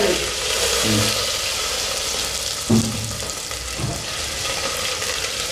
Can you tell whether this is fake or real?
real